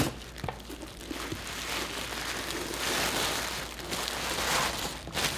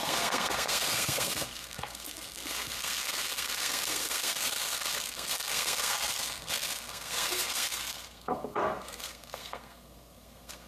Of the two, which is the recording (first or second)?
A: first